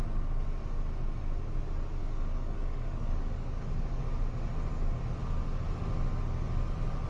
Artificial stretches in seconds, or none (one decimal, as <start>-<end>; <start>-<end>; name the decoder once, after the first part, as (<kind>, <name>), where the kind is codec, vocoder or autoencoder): 2.0-4.0 (codec, DAC)